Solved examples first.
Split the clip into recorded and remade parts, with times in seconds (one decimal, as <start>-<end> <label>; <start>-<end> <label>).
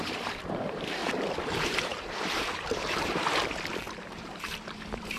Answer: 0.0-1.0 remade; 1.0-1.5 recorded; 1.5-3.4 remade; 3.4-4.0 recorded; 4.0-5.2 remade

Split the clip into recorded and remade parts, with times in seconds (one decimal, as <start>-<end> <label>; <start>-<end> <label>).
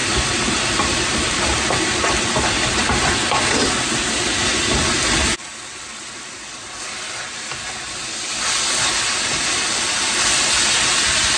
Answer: 0.0-11.4 recorded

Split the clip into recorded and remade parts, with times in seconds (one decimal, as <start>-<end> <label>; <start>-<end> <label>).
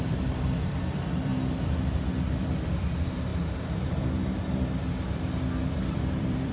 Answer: 0.0-1.3 remade; 1.3-2.0 recorded; 2.0-3.3 remade; 3.3-5.7 recorded; 5.7-6.5 remade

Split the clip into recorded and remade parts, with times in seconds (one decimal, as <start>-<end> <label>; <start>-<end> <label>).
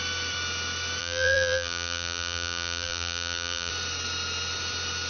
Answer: 0.0-1.0 recorded; 1.0-3.7 remade; 3.7-5.1 recorded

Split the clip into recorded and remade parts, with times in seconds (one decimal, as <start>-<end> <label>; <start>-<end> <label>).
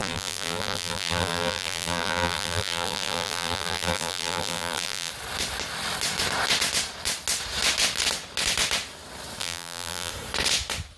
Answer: 0.0-5.1 remade; 5.1-9.4 recorded; 9.4-10.1 remade; 10.1-11.0 recorded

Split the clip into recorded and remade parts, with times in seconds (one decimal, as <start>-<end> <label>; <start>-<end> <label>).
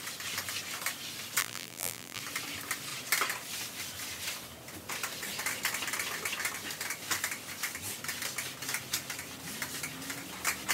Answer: 0.0-1.4 recorded; 1.4-2.2 remade; 2.2-10.7 recorded